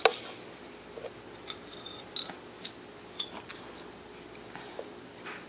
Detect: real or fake real